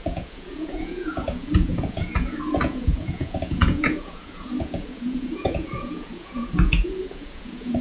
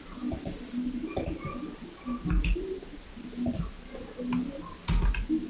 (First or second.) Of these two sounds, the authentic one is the second